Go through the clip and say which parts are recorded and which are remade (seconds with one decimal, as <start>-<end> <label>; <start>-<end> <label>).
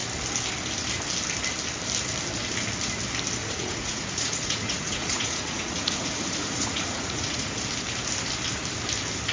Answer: 0.0-3.4 recorded; 3.4-7.5 remade; 7.5-9.3 recorded